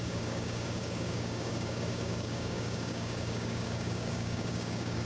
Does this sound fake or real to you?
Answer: fake